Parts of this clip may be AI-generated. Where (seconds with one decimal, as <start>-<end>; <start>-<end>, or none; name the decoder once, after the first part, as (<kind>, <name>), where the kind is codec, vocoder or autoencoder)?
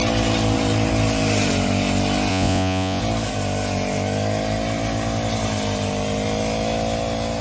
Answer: 2.3-3.0 (vocoder, Vocos)